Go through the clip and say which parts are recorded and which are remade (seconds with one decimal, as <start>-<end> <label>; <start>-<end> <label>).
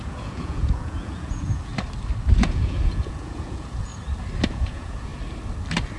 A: 0.0-1.7 remade; 1.7-2.4 recorded; 2.4-3.9 remade; 3.9-4.5 recorded; 4.5-5.1 remade; 5.1-6.0 recorded